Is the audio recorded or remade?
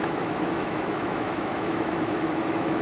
remade